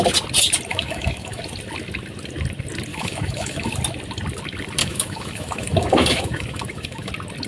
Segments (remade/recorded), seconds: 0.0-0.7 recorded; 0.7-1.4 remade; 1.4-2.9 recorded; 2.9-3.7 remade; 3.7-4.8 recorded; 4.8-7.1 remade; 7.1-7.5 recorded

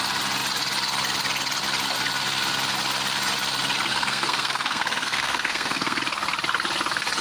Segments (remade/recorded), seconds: 0.0-3.9 recorded; 3.9-6.0 remade; 6.0-7.2 recorded

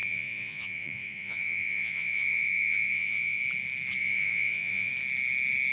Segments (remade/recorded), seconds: 0.0-3.4 remade; 3.4-4.0 recorded; 4.0-4.9 remade; 4.9-5.7 recorded

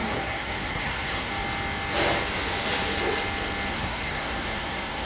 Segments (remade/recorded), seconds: 0.0-1.3 remade; 1.3-3.7 recorded; 3.7-5.1 remade

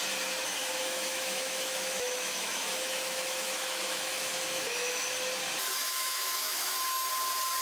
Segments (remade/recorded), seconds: 0.0-0.6 recorded; 0.6-5.0 remade; 5.0-5.8 recorded; 5.8-7.1 remade; 7.1-7.6 recorded

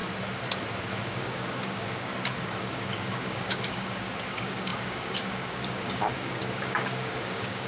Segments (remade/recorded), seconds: 0.0-1.0 recorded; 1.0-2.1 remade; 2.1-2.6 recorded; 2.6-7.7 remade

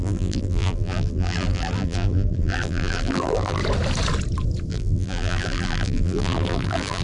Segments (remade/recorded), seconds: 0.0-3.6 remade; 3.6-4.7 recorded; 4.7-7.0 remade